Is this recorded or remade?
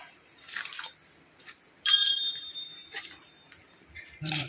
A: remade